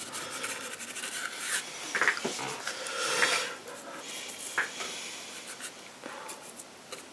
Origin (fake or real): real